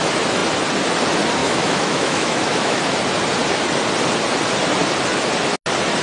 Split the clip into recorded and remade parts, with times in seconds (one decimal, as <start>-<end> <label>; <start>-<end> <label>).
0.0-1.4 recorded; 1.4-2.8 remade; 2.8-6.0 recorded